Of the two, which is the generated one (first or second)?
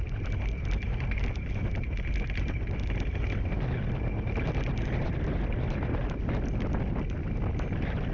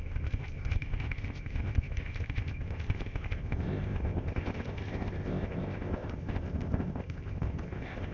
second